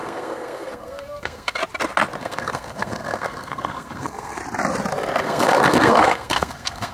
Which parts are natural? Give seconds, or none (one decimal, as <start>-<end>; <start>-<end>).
1.6-2.2; 4.4-5.2